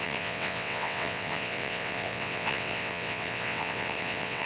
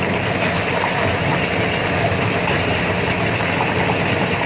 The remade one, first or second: first